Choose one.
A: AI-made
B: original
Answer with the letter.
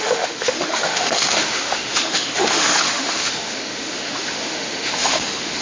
A